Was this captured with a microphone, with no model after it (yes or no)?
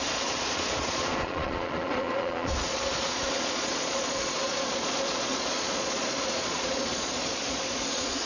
no